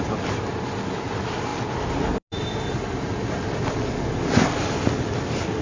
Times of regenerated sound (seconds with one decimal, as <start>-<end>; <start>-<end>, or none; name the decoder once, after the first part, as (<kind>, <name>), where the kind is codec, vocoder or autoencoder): none